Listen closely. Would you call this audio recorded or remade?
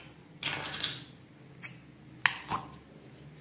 recorded